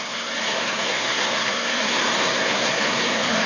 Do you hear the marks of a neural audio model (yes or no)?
yes